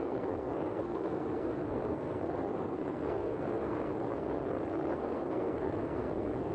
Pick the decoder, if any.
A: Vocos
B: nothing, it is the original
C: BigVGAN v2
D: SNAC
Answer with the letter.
D